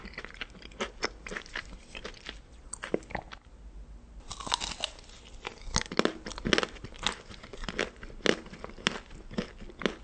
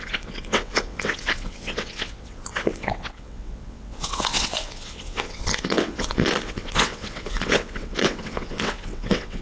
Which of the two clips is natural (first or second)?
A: first